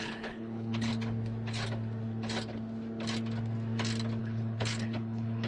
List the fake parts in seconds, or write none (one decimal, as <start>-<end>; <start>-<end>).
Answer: 0.0-0.9; 4.2-5.5